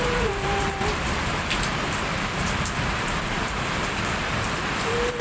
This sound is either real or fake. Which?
fake